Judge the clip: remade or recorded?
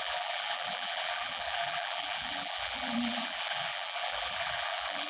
remade